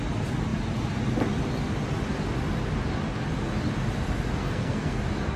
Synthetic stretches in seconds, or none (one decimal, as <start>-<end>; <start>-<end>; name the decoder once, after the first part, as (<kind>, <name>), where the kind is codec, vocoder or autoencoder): 4.4-5.0 (codec, SNAC)